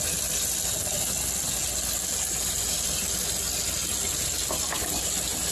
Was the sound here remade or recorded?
recorded